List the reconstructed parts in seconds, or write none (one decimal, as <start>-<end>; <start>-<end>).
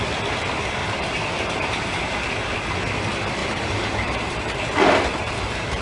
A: 0.8-2.3; 3.4-5.3